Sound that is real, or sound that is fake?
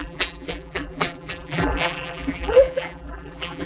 fake